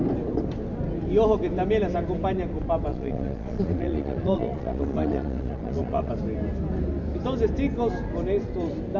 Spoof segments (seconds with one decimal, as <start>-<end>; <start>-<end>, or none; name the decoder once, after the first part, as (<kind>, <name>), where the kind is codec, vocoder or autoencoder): 2.9-6.1 (vocoder, Vocos)